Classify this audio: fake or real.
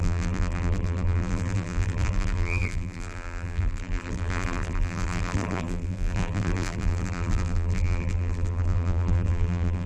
fake